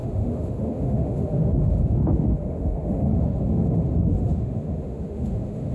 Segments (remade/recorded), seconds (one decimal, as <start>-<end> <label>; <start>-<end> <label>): 0.0-5.7 remade